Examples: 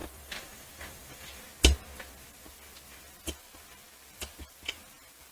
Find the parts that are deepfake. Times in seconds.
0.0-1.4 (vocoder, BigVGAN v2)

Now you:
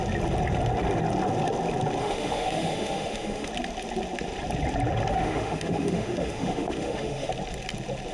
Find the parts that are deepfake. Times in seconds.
2.0-3.5 (autoencoder, DAC-VAE); 5.1-7.3

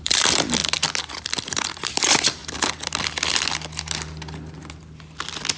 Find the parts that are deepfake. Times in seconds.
0.0-0.6 (vocoder, BigVGAN v2); 1.1-2.4

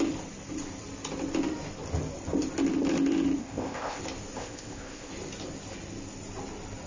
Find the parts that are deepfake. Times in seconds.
3.4-4.0 (codec, ZipCodec); 4.4-5.1

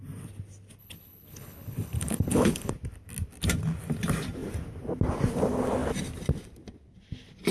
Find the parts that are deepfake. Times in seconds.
0.8-2.7 (codec, HILCodec)